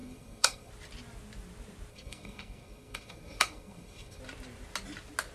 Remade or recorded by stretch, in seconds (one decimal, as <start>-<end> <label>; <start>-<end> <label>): 0.0-0.7 remade; 0.7-1.9 recorded; 1.9-4.2 remade; 4.2-5.3 recorded